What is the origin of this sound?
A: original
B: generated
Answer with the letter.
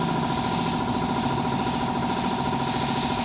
A